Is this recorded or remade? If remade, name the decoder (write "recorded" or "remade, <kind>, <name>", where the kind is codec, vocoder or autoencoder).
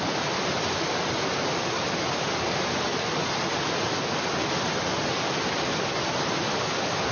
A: recorded